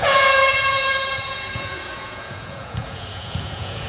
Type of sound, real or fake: fake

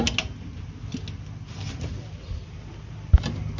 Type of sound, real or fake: real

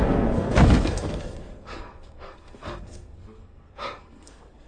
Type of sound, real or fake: fake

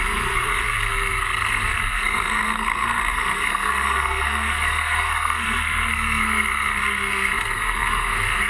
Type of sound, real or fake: fake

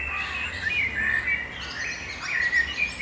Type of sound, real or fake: real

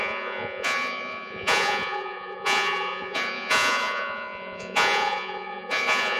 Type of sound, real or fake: fake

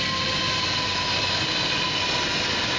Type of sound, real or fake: real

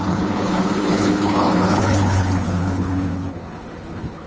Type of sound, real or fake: fake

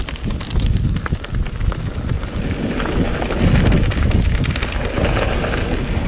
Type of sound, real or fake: real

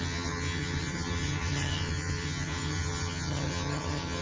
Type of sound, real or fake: fake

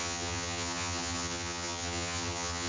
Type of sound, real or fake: fake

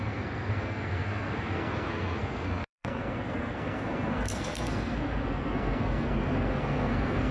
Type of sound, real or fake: fake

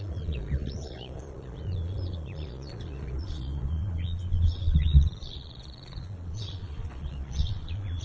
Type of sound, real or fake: fake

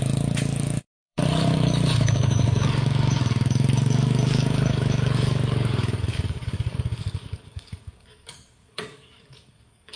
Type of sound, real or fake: fake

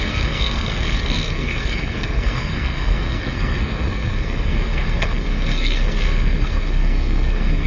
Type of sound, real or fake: fake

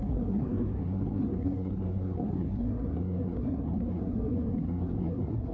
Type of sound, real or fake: fake